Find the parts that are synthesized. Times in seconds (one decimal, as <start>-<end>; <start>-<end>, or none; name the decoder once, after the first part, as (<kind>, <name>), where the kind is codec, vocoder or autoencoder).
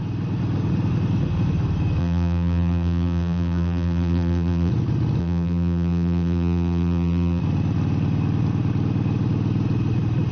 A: 2.0-4.7 (vocoder, BigVGAN v2); 5.2-7.4